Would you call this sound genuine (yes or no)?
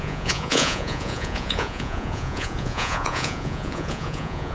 no